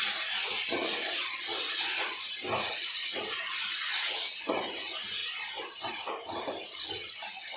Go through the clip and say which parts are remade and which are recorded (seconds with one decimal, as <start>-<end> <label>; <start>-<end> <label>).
0.0-5.2 remade; 5.2-5.9 recorded; 5.9-7.6 remade